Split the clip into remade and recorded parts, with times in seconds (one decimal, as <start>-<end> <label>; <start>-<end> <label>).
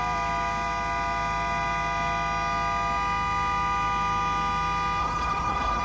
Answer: 0.0-5.0 recorded; 5.0-5.8 remade